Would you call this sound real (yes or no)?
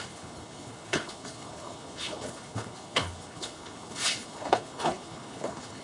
no